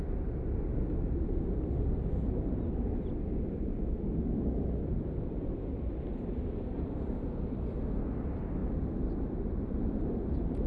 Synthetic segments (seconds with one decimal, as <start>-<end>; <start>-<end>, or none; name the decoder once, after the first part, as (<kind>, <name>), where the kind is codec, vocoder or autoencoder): none

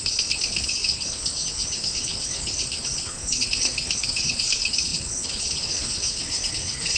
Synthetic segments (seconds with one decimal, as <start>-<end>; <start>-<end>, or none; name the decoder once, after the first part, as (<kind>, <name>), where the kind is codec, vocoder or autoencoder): 0.0-7.0 (codec, HILCodec)

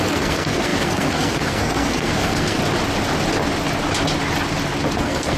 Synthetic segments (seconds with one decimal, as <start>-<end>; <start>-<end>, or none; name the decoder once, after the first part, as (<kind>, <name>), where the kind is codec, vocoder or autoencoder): 0.0-2.6 (codec, SNAC); 5.0-5.4

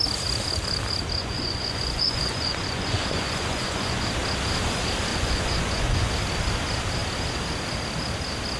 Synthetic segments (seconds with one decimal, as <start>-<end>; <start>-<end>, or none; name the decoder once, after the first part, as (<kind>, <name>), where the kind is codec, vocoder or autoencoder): 1.2-4.0 (vocoder, Vocos); 5.1-6.1